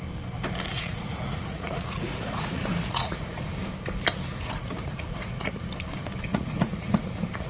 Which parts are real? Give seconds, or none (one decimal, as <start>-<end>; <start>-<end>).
0.0-0.7; 3.4-4.3; 5.7-6.3